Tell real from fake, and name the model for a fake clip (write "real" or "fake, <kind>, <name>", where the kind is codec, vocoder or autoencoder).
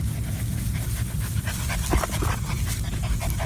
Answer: real